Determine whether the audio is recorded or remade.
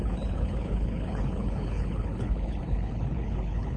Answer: remade